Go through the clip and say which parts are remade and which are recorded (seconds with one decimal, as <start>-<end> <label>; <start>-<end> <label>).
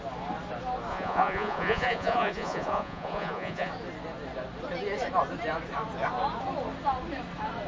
0.0-0.9 recorded; 0.9-3.7 remade; 3.7-7.7 recorded